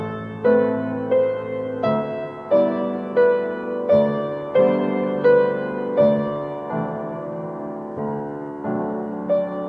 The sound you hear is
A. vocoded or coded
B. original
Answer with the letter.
B